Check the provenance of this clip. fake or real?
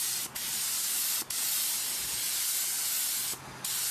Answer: real